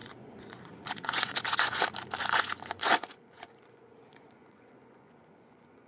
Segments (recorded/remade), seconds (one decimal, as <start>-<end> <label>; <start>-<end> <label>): 0.0-1.8 remade; 1.8-2.2 recorded; 2.2-5.9 remade